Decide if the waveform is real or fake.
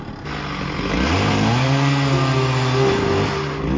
real